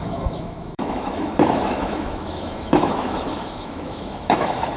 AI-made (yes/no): yes